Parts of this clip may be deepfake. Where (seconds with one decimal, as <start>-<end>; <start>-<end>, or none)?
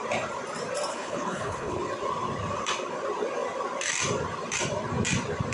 0.9-1.8